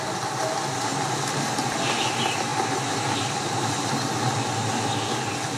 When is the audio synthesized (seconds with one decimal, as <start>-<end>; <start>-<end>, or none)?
none